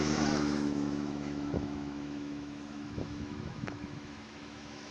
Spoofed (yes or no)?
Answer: yes